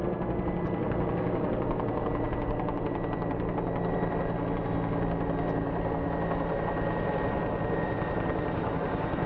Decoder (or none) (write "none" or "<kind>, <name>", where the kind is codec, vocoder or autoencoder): none